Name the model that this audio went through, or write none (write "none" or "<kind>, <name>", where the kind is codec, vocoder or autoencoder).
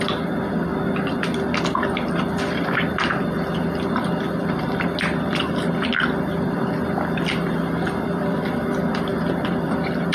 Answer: vocoder, BigVGAN v2